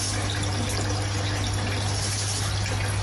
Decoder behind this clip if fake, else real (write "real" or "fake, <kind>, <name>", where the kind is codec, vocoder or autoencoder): real